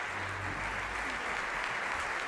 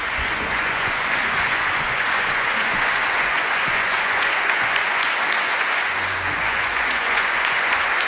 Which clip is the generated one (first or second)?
second